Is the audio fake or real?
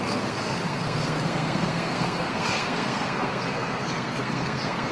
fake